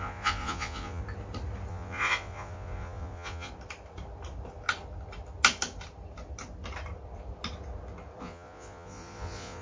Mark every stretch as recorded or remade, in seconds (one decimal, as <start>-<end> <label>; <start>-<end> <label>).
0.0-1.0 remade; 1.0-1.7 recorded; 1.7-3.5 remade; 3.5-8.2 recorded; 8.2-9.6 remade